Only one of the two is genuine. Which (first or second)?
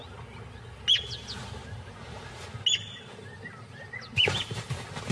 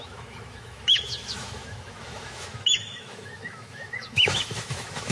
first